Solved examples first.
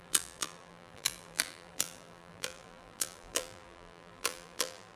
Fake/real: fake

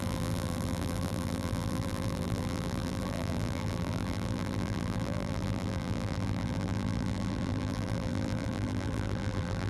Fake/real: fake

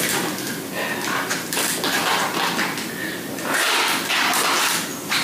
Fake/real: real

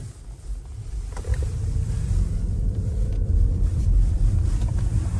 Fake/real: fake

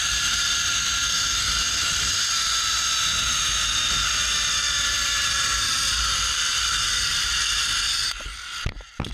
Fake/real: real